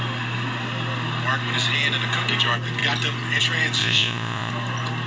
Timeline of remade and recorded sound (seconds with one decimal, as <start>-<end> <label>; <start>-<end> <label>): 0.0-3.8 recorded; 3.8-4.5 remade; 4.5-5.1 recorded